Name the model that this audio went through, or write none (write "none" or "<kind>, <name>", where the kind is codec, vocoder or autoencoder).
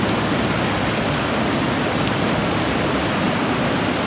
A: none